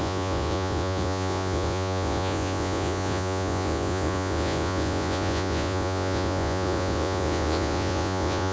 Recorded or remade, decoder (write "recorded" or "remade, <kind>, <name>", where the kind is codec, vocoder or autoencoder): remade, vocoder, Vocos